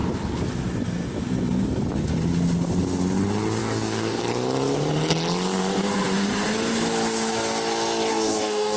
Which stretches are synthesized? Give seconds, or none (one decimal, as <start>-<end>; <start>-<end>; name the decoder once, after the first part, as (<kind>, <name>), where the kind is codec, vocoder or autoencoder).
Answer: 3.6-4.2 (codec, DAC); 8.1-8.8